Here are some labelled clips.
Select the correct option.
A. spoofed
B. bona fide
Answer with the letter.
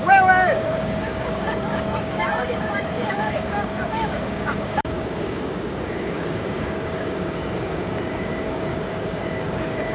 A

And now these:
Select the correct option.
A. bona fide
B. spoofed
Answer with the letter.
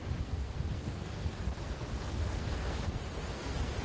B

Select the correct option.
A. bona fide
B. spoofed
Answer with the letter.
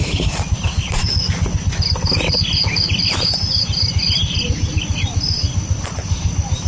A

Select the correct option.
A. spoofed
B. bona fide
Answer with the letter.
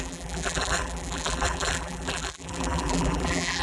A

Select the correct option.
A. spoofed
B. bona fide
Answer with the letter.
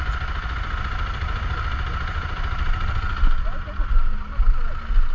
B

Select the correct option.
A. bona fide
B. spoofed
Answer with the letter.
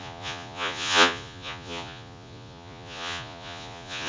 B